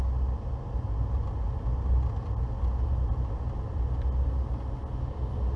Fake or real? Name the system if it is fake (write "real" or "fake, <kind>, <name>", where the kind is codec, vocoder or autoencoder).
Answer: real